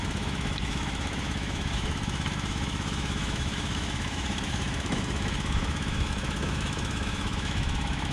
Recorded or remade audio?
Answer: remade